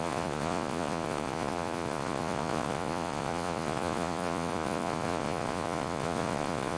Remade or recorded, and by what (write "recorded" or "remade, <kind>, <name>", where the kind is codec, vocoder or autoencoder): remade, vocoder, Vocos